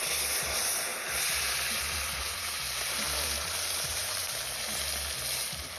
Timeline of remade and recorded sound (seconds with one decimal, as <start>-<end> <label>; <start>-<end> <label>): 0.0-0.9 recorded; 0.9-4.4 remade; 4.4-5.8 recorded